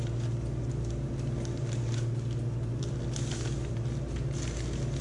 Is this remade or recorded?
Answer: recorded